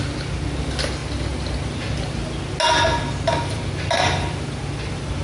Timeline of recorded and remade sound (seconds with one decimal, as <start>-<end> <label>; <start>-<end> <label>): 0.0-5.2 recorded